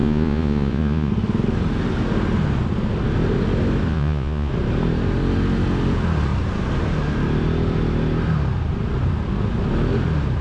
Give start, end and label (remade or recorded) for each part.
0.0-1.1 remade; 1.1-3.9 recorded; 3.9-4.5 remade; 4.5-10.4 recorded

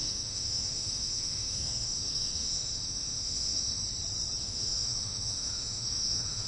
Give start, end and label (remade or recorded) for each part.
0.0-3.8 remade; 3.8-4.4 recorded; 4.4-6.5 remade

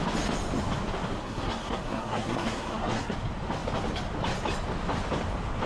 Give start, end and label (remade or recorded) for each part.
0.0-1.2 recorded; 1.2-3.1 remade; 3.1-5.7 recorded

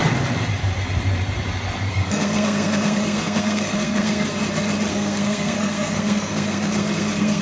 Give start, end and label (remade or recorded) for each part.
0.0-1.9 recorded; 1.9-4.4 remade; 4.4-4.9 recorded; 4.9-7.4 remade

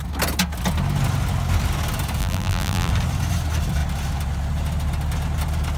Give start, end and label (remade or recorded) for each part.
0.0-2.2 recorded; 2.2-2.9 remade; 2.9-5.8 recorded

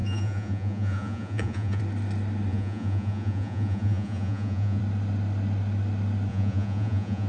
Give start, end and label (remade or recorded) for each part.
0.0-1.8 remade; 1.8-2.5 recorded; 2.5-4.8 remade; 4.8-6.3 recorded; 6.3-7.3 remade

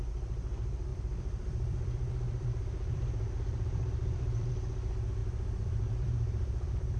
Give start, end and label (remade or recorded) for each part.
0.0-0.9 recorded; 0.9-4.5 remade; 4.5-5.2 recorded; 5.2-7.0 remade

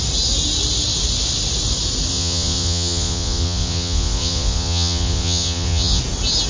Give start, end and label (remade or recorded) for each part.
0.0-2.1 recorded; 2.1-6.0 remade; 6.0-6.5 recorded